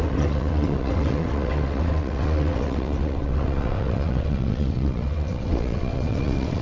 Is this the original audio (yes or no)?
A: no